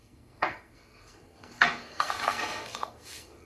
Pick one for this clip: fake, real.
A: fake